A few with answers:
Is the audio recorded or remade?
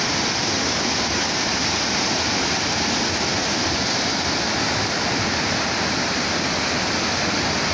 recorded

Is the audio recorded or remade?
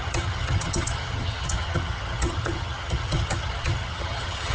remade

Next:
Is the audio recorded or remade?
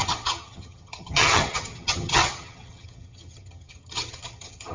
remade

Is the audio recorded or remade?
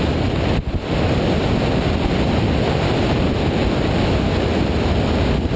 recorded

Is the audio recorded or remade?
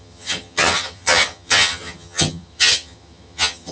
remade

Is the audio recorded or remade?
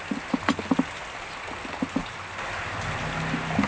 recorded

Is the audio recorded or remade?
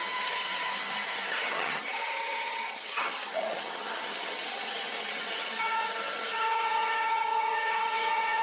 remade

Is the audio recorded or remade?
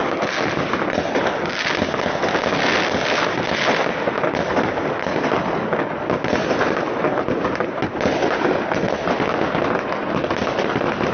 recorded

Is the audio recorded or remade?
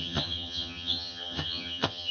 remade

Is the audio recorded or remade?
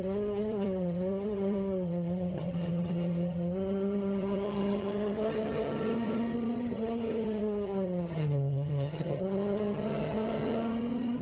remade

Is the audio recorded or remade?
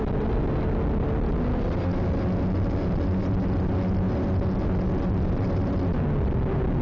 recorded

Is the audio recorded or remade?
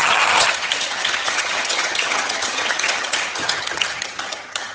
remade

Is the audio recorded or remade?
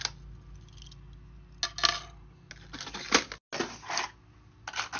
recorded